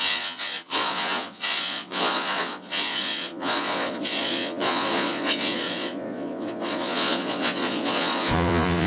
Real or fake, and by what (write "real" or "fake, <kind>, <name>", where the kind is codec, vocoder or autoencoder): fake, vocoder, Vocos